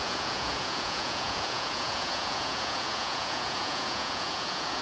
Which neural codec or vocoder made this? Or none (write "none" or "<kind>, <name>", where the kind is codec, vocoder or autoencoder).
vocoder, Vocos